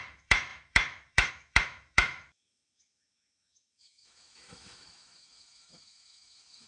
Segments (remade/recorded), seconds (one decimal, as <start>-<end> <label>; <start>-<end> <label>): 0.0-6.7 remade